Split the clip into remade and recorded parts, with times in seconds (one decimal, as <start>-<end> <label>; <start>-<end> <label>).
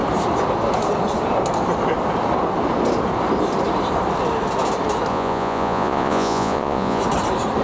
0.0-5.1 recorded; 5.1-7.0 remade; 7.0-7.6 recorded